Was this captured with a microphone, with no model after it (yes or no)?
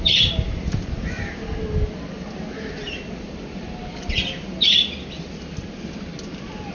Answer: yes